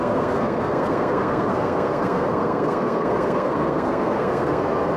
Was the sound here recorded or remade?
remade